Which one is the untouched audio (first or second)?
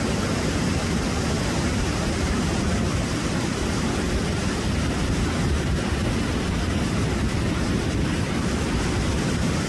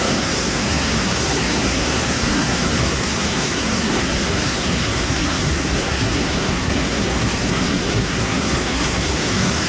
first